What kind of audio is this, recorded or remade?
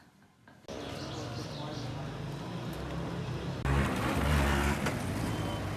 recorded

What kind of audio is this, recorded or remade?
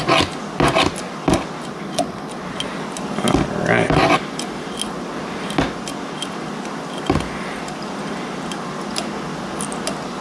recorded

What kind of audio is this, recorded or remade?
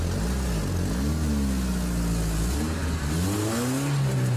recorded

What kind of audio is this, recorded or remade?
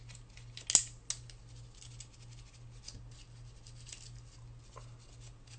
recorded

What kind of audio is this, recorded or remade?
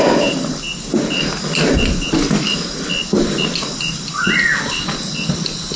recorded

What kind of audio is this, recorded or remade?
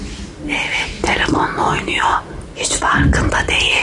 remade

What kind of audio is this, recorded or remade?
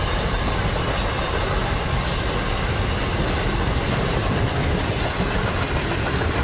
recorded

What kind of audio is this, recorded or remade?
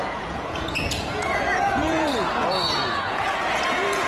remade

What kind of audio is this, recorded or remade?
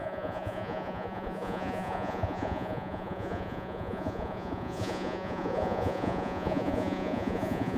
remade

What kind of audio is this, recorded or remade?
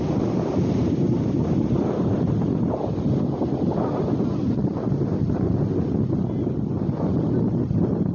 recorded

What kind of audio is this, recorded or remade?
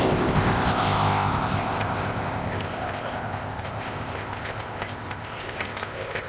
remade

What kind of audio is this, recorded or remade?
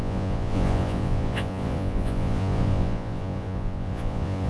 remade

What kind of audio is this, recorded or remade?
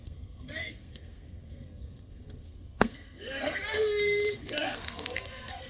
remade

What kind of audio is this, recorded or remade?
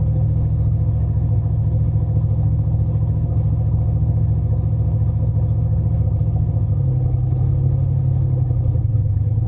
remade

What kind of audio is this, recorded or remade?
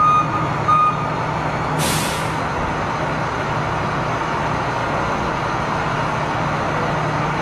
recorded